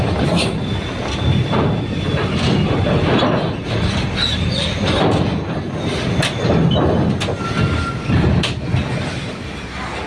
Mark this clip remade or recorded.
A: recorded